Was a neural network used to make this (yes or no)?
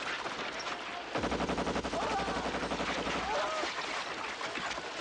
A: no